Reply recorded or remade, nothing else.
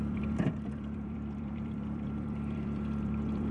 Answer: remade